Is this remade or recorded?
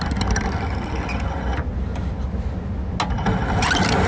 recorded